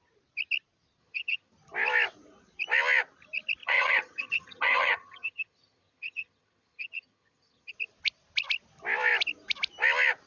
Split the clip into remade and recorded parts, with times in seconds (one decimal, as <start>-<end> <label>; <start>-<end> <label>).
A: 0.0-1.0 recorded; 1.0-1.5 remade; 1.5-3.6 recorded; 3.6-7.7 remade; 7.7-10.3 recorded